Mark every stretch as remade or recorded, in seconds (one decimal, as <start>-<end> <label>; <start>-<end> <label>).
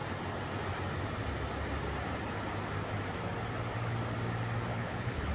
0.0-4.7 recorded; 4.7-5.3 remade